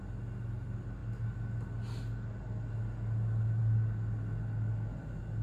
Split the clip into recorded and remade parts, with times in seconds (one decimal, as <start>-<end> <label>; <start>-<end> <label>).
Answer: 0.0-5.4 recorded

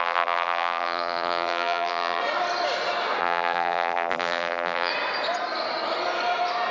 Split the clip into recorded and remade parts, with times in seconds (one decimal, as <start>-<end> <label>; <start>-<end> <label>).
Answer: 0.0-2.2 remade; 2.2-3.2 recorded; 3.2-4.9 remade; 4.9-6.7 recorded